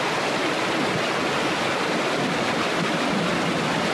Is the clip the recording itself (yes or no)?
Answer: yes